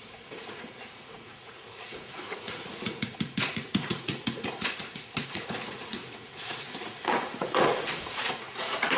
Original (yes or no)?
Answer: no